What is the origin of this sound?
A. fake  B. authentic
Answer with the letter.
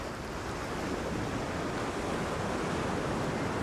B